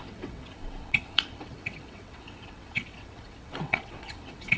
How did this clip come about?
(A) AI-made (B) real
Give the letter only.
A